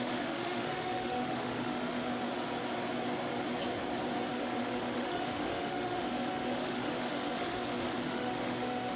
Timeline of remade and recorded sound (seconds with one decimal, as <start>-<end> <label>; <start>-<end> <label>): 0.0-2.1 remade; 2.1-4.3 recorded; 4.3-9.0 remade